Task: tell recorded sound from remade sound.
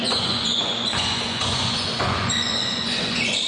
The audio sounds remade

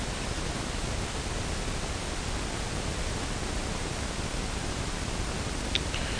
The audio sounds recorded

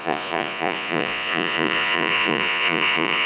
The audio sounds remade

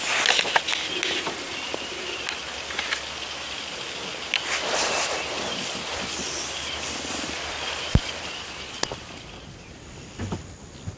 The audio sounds recorded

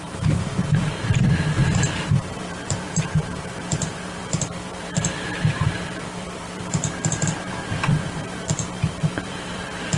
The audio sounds remade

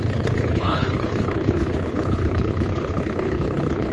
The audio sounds remade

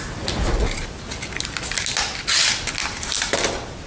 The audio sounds recorded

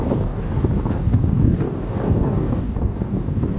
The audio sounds remade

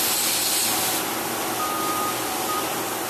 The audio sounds recorded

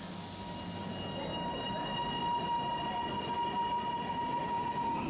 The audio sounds recorded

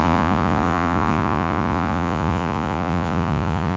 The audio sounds remade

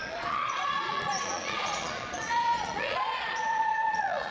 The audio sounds remade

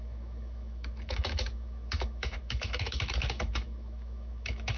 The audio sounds remade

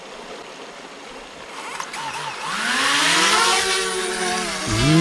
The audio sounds recorded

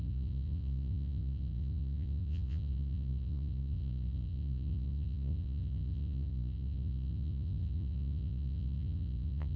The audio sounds remade